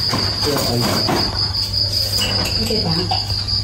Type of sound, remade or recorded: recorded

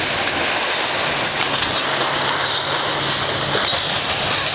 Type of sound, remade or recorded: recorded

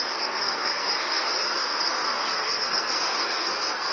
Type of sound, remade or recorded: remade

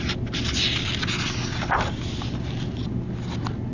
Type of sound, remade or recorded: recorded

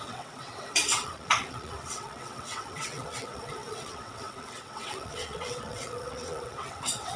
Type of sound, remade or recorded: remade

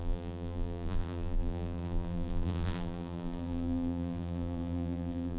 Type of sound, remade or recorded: remade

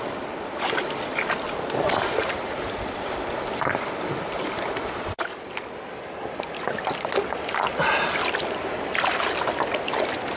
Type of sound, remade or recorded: recorded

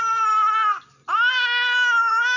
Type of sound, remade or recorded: recorded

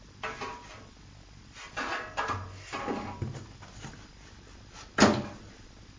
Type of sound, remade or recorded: recorded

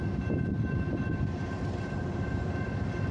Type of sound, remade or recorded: remade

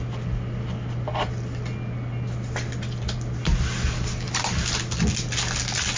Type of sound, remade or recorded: recorded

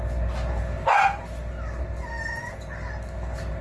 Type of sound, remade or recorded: recorded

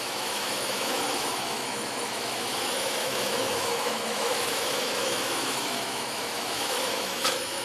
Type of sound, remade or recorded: remade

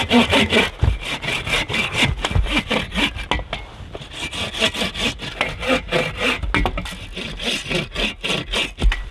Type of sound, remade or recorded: recorded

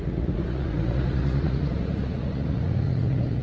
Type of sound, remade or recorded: remade